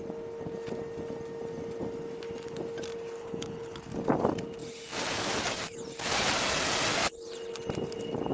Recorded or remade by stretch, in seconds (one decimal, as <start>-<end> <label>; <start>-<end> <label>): 0.0-3.2 recorded; 3.2-3.8 remade; 3.8-8.3 recorded